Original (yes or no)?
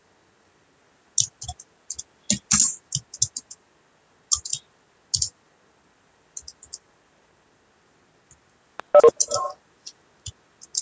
yes